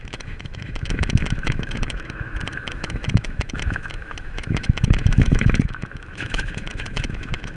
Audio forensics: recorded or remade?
remade